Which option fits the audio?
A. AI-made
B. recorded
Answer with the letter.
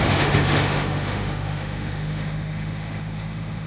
A